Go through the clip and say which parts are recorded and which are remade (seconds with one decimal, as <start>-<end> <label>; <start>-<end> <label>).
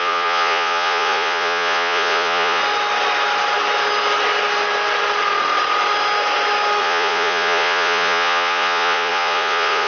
0.0-2.6 remade; 2.6-6.8 recorded; 6.8-9.9 remade